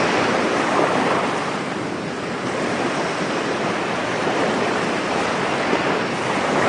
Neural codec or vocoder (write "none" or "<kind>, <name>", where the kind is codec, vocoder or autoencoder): none